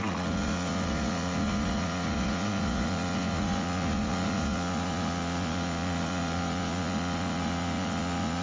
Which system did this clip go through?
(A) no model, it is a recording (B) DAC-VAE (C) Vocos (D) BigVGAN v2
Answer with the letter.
C